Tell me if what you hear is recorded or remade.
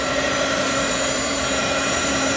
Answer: remade